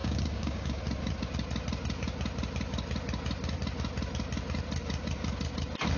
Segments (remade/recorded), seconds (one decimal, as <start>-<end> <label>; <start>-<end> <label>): 0.0-0.8 remade; 0.8-6.0 recorded